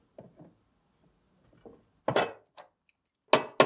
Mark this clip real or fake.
real